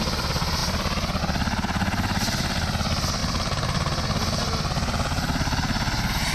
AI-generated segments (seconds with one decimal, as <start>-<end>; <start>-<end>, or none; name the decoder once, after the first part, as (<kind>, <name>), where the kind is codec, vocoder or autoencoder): none